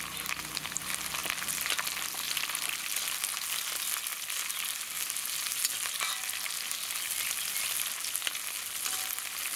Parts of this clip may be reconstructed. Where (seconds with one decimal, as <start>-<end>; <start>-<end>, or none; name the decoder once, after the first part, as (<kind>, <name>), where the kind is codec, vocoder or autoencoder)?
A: none